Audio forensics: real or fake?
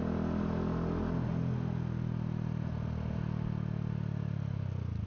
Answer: real